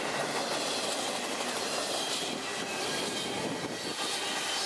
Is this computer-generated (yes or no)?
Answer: no